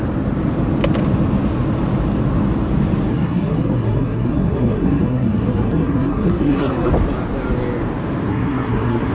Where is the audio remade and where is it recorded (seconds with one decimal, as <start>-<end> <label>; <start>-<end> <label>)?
0.0-3.1 recorded; 3.1-6.9 remade; 6.9-8.3 recorded; 8.3-9.1 remade